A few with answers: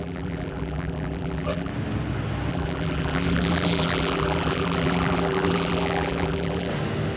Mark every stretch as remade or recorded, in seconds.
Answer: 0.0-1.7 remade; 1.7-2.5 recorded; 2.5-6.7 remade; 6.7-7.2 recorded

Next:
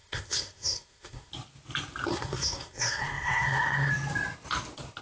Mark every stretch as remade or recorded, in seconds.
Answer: 0.0-1.3 remade; 1.3-2.1 recorded; 2.1-3.9 remade; 3.9-5.0 recorded

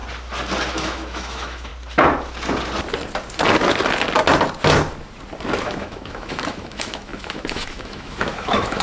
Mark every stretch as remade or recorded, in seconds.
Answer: 0.0-0.7 recorded; 0.7-1.7 remade; 1.7-5.6 recorded; 5.6-8.8 remade

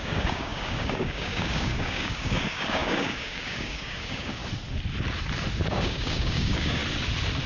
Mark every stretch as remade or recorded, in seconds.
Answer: 0.0-4.4 remade; 4.4-5.7 recorded; 5.7-6.8 remade; 6.8-7.5 recorded

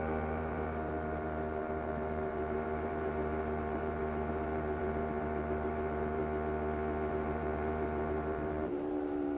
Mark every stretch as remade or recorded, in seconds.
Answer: 0.0-6.2 remade; 6.2-7.1 recorded; 7.1-9.4 remade

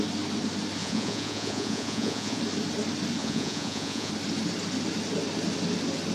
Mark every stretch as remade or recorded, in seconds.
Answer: 0.0-0.8 recorded; 0.8-2.4 remade; 2.4-3.2 recorded; 3.2-4.1 remade; 4.1-6.1 recorded

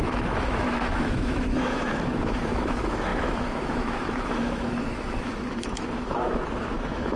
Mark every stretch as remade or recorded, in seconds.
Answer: 0.0-7.2 remade

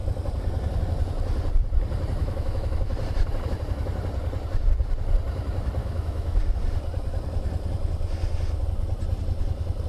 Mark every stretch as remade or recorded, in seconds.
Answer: 0.0-2.2 recorded; 2.2-2.7 remade; 2.7-5.8 recorded; 5.8-6.4 remade; 6.4-9.9 recorded